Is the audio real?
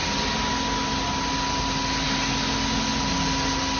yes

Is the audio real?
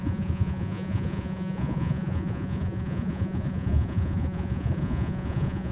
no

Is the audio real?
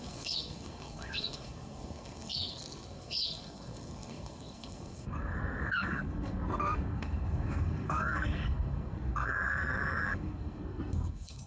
no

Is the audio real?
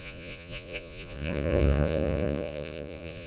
no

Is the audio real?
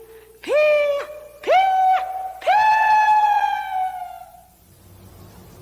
yes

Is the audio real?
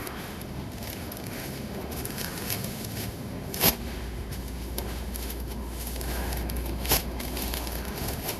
no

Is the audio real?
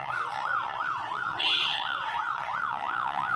no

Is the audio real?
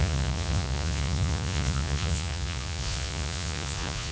no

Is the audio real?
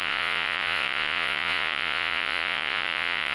no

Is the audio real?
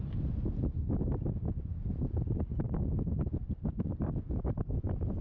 yes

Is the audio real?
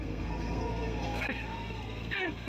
no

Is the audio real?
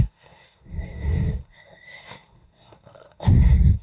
no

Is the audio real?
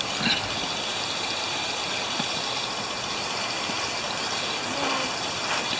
yes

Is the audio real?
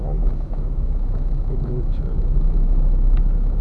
no